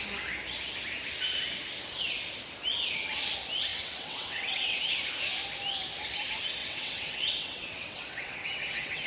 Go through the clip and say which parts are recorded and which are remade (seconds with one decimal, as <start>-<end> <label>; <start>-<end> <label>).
0.0-3.7 recorded; 3.7-4.9 remade; 4.9-6.6 recorded; 6.6-9.1 remade